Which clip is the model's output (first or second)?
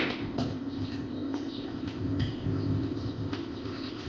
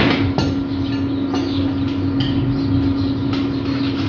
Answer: first